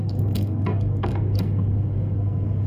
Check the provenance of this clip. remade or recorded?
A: remade